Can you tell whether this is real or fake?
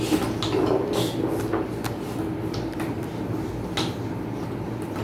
real